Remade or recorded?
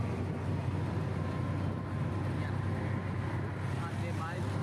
recorded